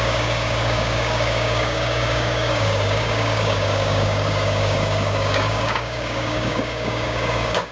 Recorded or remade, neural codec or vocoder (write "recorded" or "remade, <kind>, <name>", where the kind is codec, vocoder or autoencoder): remade, codec, DAC